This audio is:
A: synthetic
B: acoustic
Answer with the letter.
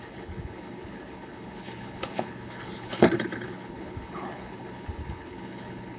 A